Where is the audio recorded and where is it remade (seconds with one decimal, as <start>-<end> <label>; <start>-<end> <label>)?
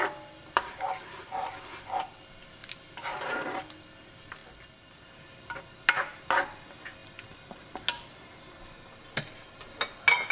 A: 0.0-10.3 recorded